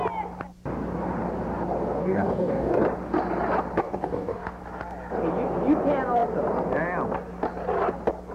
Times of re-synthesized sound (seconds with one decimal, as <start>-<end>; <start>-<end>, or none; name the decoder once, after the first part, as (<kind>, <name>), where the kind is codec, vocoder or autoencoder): 2.0-2.8 (codec, DAC); 3.8-4.6